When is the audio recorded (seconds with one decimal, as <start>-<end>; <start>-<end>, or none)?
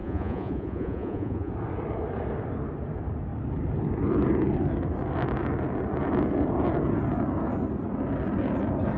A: 1.5-9.0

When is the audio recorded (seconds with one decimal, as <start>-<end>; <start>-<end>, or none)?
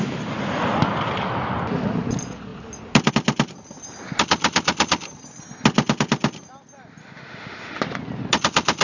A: 0.0-7.0; 7.8-8.8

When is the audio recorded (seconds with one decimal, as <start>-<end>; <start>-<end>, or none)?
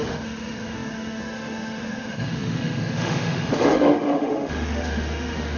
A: none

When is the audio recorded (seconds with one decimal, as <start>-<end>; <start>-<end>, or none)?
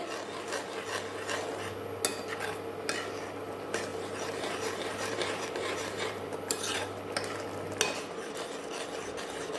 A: 0.0-3.9; 6.8-9.6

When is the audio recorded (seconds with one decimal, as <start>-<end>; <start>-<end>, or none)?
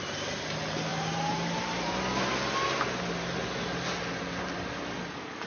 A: 0.0-0.9; 2.0-5.5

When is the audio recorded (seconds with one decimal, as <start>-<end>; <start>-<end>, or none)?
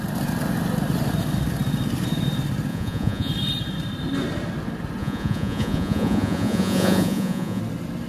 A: 0.0-2.7; 3.3-5.0; 7.6-8.1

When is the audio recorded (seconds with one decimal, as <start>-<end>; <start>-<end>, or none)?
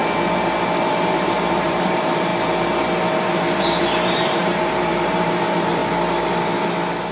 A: 0.0-0.9; 2.3-3.6; 5.8-7.1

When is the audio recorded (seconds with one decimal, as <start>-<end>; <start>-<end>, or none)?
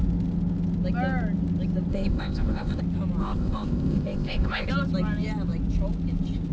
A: 0.0-1.9; 2.8-3.2; 4.7-6.5